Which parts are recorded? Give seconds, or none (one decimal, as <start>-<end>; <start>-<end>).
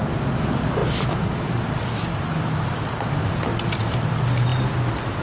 0.8-2.9; 3.5-4.1; 4.5-5.2